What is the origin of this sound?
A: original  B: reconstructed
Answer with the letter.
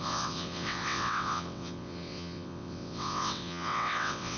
B